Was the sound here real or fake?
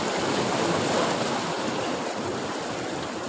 real